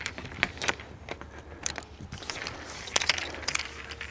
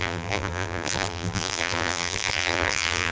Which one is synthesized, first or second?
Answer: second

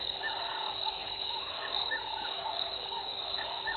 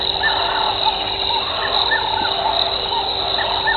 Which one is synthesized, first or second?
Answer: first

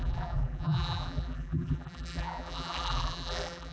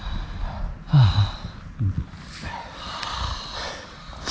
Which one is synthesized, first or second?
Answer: first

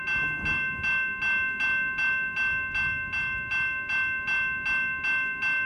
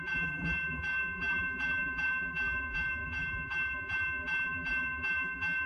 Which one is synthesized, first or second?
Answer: second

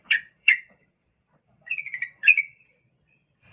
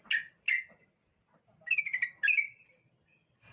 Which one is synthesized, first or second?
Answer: first